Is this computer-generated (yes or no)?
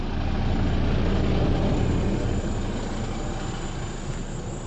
no